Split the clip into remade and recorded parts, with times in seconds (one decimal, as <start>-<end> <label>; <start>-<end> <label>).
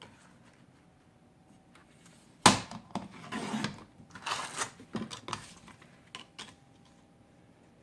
0.0-7.8 recorded